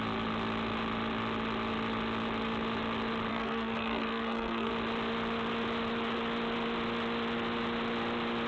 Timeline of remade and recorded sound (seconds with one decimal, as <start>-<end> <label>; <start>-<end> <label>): 0.0-3.3 recorded; 3.3-4.7 remade; 4.7-8.5 recorded